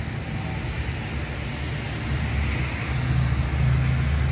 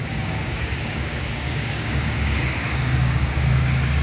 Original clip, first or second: first